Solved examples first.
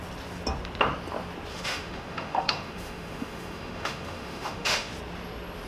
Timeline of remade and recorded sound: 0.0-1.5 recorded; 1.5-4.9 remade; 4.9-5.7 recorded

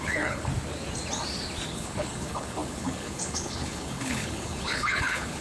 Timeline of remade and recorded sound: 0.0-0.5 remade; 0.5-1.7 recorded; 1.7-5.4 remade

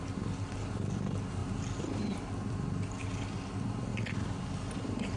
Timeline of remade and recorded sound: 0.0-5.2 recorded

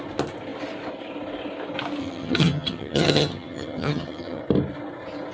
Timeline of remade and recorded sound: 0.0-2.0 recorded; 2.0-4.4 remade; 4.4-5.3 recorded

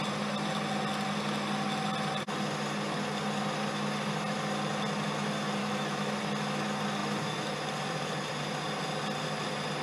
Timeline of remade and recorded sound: 0.0-5.6 recorded; 5.6-6.2 remade; 6.2-9.8 recorded

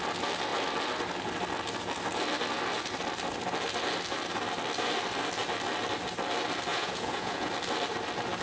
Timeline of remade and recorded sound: 0.0-6.7 recorded; 6.7-7.5 remade; 7.5-8.4 recorded